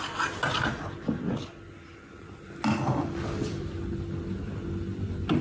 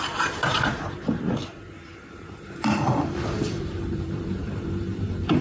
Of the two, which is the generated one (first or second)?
second